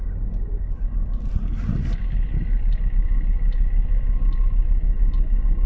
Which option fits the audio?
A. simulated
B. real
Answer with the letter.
B